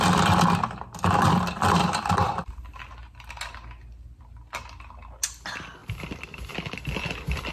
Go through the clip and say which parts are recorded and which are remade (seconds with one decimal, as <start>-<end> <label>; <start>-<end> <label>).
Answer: 0.0-7.5 recorded